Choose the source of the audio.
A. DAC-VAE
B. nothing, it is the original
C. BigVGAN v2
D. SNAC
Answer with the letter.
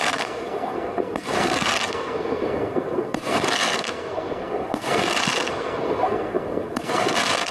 D